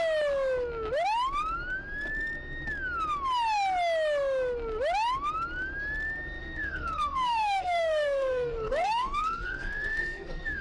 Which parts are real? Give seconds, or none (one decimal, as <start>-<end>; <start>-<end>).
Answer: 0.0-6.4